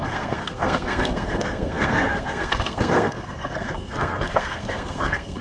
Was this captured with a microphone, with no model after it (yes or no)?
no